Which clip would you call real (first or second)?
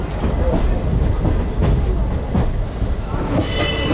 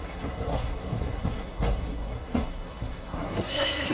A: first